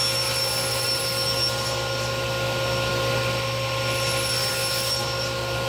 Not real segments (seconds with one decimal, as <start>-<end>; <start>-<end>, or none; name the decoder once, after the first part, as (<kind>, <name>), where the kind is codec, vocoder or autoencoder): none